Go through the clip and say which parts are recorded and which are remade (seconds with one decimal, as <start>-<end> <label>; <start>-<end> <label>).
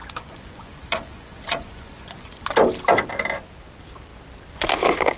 0.0-2.5 remade; 2.5-5.2 recorded